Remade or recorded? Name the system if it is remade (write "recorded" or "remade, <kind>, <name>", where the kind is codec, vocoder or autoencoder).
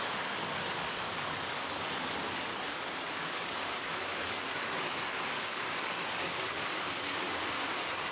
remade, codec, DAC